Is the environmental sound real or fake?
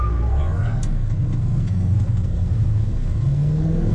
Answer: fake